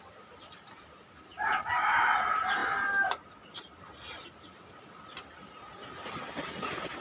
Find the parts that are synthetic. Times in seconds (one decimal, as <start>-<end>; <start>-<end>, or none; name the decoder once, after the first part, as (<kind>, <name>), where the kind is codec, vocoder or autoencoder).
none